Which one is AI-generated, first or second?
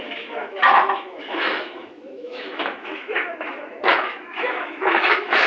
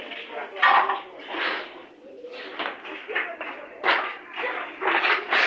first